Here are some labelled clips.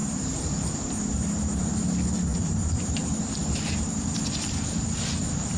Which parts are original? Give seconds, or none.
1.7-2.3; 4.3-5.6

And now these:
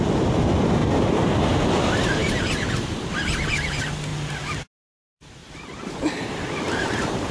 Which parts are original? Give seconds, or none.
0.0-0.8; 1.3-5.4

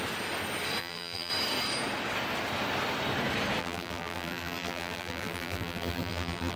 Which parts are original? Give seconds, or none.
0.0-0.8; 1.3-3.6

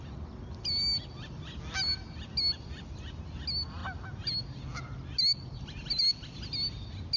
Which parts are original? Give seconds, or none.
0.0-7.2